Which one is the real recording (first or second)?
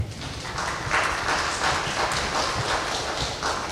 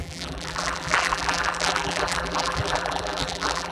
first